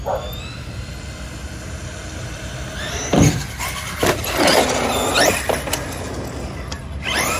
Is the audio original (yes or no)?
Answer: yes